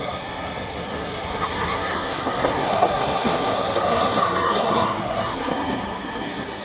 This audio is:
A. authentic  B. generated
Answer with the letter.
B